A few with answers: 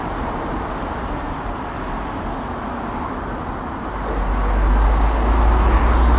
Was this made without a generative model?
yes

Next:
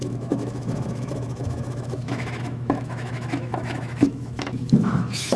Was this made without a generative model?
no